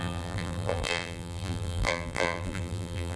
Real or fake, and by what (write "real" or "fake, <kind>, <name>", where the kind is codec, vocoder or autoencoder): fake, vocoder, BigVGAN v2